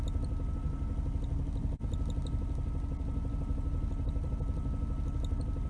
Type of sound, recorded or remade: recorded